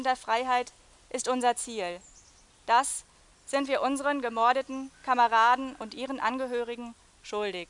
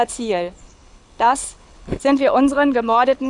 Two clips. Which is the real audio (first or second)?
first